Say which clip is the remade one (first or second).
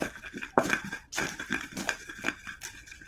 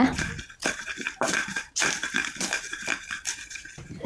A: second